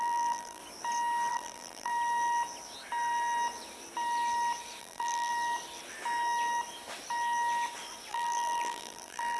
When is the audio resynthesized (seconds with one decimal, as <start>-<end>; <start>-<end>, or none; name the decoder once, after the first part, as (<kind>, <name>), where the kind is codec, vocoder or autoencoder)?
0.0-0.6 (vocoder, BigVGAN v2); 1.3-1.9; 4.8-5.3; 8.1-9.4